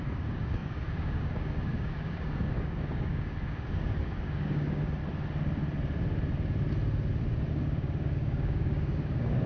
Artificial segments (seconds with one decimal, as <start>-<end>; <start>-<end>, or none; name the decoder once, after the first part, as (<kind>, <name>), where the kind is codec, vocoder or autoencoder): 0.0-5.0 (codec, DAC); 7.5-9.5